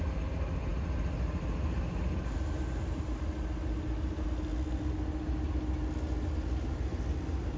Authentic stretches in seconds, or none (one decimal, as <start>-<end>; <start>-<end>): 0.0-7.6